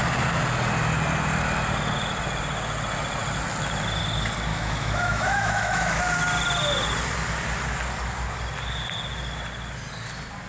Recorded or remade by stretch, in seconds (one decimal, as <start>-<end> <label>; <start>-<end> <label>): 0.0-4.5 recorded; 4.5-6.0 remade; 6.0-10.5 recorded